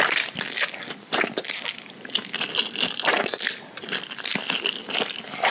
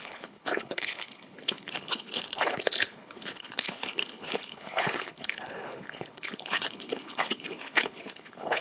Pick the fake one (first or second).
second